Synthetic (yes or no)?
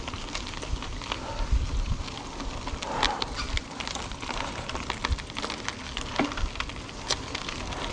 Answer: no